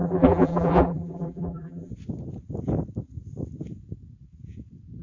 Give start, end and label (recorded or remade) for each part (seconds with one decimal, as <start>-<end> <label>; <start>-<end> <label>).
0.0-1.9 remade; 1.9-5.0 recorded